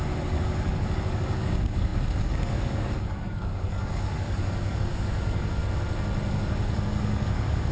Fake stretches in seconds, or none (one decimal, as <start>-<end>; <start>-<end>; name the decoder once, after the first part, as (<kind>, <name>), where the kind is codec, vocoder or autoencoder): 0.0-5.6 (codec, DAC); 6.3-7.7